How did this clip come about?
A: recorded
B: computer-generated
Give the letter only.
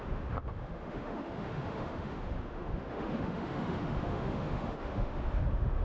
B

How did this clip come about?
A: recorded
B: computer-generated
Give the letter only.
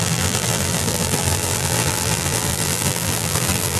B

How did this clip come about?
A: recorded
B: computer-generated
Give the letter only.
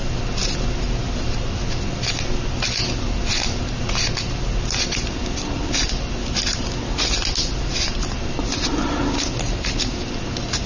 A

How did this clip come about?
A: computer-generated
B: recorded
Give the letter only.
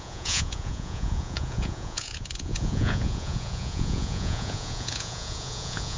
A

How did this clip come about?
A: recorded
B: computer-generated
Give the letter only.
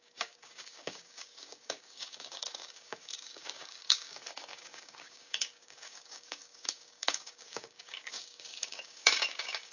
B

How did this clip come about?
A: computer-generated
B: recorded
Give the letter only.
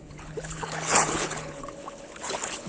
A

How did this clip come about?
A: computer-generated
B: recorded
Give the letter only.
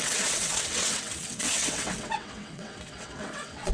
A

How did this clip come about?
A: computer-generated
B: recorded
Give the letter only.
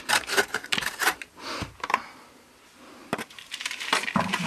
A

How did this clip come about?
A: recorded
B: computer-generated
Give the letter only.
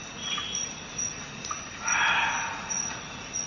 B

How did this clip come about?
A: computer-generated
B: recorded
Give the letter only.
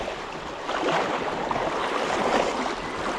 B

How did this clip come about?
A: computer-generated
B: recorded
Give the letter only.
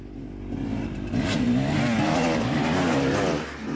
B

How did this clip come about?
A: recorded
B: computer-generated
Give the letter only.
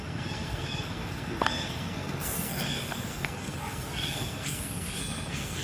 B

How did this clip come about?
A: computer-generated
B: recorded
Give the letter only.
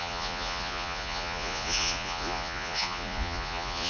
A